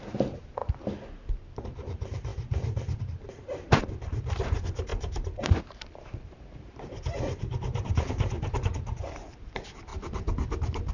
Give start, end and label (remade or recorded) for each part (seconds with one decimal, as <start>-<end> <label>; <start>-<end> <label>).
0.0-0.6 remade; 0.6-1.6 recorded; 1.6-9.9 remade; 9.9-10.9 recorded